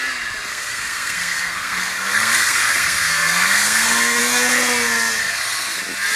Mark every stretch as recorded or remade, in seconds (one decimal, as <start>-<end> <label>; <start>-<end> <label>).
0.0-0.5 recorded; 0.5-4.2 remade; 4.2-5.2 recorded; 5.2-5.8 remade; 5.8-6.2 recorded